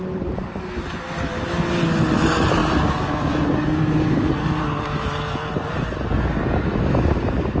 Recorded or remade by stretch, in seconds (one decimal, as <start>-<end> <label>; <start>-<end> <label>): 0.0-7.6 recorded